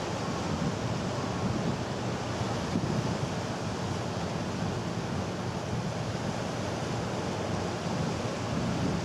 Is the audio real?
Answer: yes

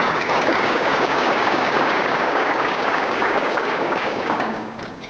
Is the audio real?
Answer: no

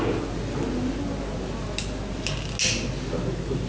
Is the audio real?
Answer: yes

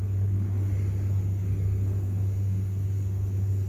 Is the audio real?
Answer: no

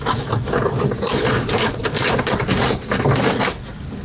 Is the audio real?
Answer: yes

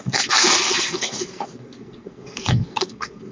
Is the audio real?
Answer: no